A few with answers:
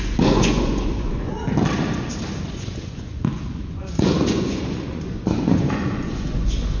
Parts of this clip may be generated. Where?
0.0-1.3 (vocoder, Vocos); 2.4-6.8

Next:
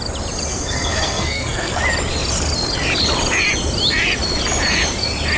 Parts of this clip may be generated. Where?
0.5-1.8 (codec, SNAC)

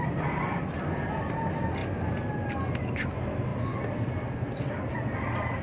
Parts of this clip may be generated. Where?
none

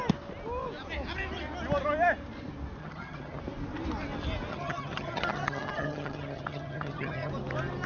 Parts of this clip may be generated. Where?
2.8-3.4 (vocoder, HiFi-GAN); 4.5-7.3

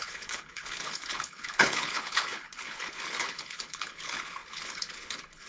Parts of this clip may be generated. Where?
0.0-5.5 (codec, HILCodec)